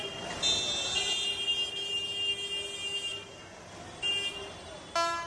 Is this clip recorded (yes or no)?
yes